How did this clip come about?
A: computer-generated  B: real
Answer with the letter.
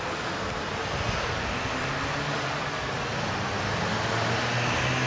B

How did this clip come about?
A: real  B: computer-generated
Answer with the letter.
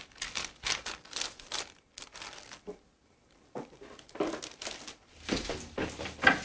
A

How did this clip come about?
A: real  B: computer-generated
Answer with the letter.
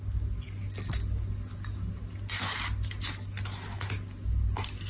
A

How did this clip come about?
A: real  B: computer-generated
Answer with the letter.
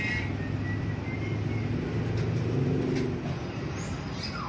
A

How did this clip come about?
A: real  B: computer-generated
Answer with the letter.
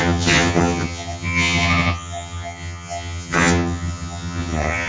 B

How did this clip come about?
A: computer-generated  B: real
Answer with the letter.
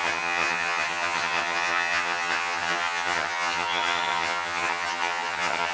A